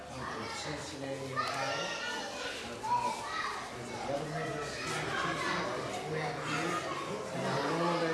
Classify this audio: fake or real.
real